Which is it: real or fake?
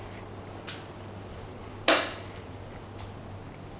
real